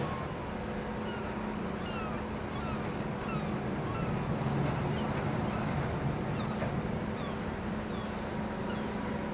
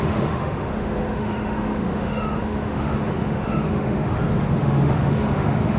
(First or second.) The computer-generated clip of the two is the second